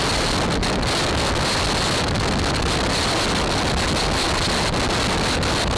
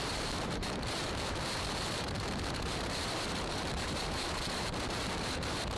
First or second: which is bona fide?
first